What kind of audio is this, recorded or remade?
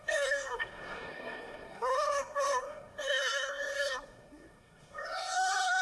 remade